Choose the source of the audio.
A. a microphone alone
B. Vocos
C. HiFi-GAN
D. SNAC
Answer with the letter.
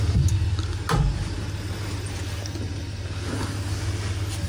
A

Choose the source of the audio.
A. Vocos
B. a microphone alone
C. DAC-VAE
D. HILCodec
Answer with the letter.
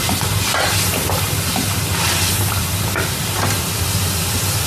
B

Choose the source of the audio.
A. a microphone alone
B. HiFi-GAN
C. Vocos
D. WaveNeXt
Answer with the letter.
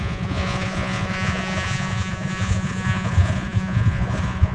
C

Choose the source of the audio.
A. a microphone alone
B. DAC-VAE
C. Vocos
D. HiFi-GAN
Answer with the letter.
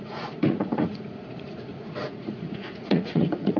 C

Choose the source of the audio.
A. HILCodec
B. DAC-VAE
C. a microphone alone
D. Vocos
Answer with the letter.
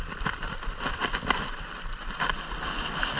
C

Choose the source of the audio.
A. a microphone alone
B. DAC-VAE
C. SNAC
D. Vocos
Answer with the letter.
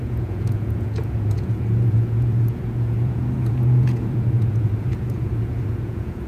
D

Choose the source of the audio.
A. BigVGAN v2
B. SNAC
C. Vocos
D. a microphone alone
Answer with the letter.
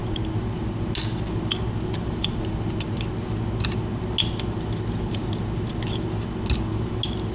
D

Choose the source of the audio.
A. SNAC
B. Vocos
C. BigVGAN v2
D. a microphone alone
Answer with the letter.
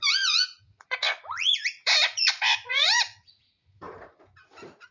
B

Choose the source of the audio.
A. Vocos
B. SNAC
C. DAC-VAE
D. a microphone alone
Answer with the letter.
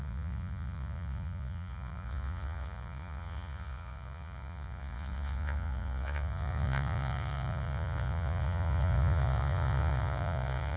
A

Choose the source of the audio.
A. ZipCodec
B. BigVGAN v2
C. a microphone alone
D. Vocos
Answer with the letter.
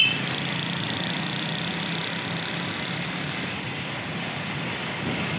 C